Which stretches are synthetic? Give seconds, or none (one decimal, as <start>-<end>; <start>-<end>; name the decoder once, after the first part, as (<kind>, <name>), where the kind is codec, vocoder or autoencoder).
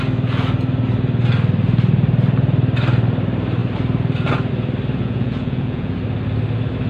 5.0-6.0 (vocoder, Vocos)